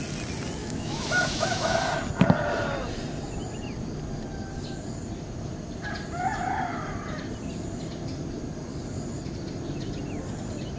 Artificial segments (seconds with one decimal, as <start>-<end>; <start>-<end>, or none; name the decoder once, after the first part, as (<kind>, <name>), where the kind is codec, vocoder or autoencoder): 0.6-1.7 (autoencoder, DAC-VAE)